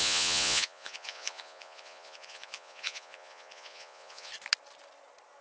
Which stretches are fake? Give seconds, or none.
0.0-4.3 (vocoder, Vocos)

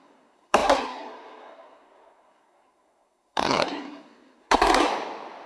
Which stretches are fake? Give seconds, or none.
0.0-4.9 (codec, SNAC)

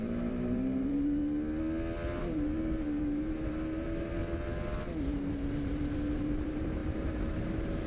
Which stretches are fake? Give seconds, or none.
0.0-1.2 (vocoder, BigVGAN v2); 2.2-4.2; 5.3-7.9

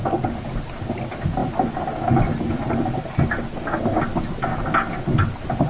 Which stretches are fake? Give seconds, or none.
none

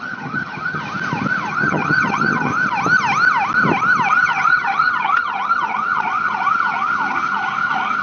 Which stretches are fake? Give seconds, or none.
0.0-0.8 (vocoder, HiFi-GAN); 1.5-2.5; 4.1-8.0

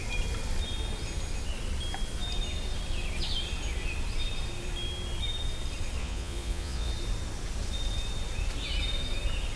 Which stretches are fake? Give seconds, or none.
6.0-6.9 (vocoder, Vocos)

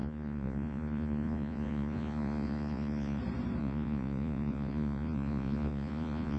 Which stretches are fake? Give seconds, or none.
0.0-3.2 (vocoder, Vocos); 3.6-6.4

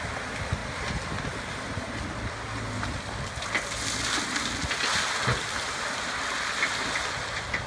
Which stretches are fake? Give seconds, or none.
none